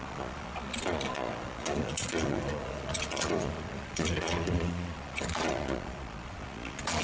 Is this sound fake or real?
fake